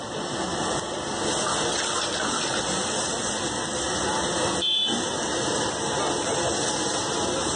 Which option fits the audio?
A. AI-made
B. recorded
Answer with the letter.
B